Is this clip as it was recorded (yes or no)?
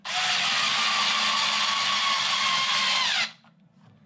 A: yes